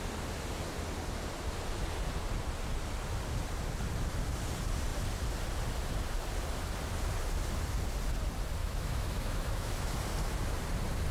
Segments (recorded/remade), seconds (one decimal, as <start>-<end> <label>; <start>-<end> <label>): 0.0-8.6 recorded; 8.6-9.9 remade; 9.9-11.1 recorded